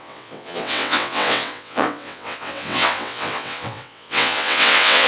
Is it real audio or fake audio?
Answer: fake